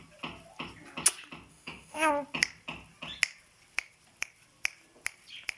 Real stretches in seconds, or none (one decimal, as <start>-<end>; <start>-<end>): 0.0-1.5; 2.1-5.6